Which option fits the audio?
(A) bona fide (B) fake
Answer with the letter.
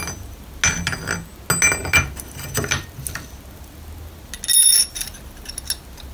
A